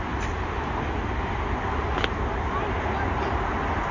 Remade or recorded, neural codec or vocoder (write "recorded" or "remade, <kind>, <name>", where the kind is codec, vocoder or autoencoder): recorded